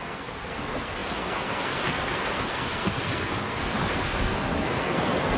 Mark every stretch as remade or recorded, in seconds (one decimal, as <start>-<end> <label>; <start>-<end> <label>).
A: 0.0-5.4 remade